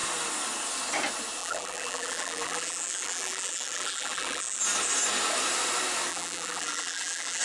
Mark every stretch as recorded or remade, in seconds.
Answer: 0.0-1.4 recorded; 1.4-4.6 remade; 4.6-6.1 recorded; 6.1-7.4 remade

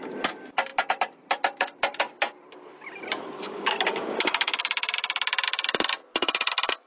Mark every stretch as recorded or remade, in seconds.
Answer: 0.0-3.4 recorded; 3.4-4.6 remade; 4.6-6.9 recorded

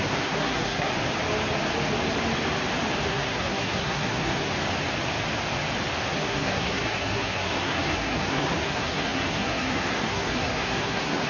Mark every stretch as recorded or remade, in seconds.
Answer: 0.0-0.9 remade; 0.9-3.1 recorded; 3.1-4.5 remade; 4.5-6.1 recorded; 6.1-11.3 remade